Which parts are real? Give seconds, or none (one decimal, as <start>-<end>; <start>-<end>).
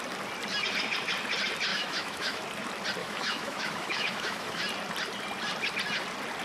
0.0-1.7; 2.4-3.0; 4.6-6.4